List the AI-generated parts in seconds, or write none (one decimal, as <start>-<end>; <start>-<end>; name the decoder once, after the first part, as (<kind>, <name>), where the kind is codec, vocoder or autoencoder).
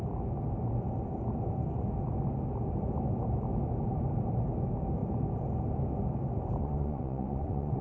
6.6-7.8 (vocoder, Vocos)